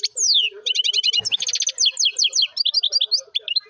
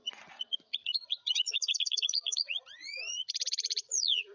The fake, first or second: second